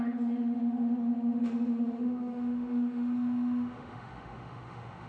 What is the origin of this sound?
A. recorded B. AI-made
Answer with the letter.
B